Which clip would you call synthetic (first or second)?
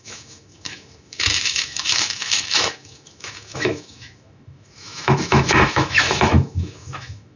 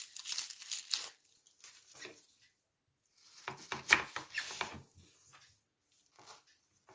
first